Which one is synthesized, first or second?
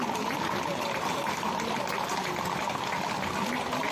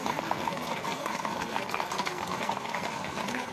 second